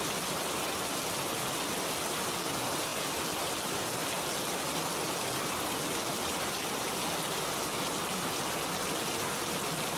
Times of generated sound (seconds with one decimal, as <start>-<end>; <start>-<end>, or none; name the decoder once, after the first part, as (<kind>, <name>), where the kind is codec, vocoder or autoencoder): none